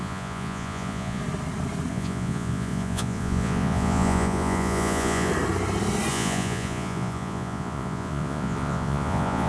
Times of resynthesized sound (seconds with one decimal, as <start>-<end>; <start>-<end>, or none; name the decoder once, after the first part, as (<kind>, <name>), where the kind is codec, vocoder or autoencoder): 0.0-1.2 (vocoder, Vocos); 1.9-5.3; 6.1-9.5